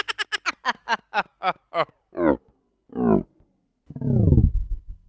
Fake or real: real